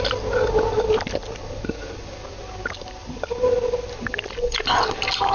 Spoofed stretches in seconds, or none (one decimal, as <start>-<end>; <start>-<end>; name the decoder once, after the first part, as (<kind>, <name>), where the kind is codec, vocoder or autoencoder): none